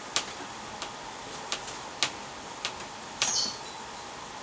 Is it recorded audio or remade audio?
recorded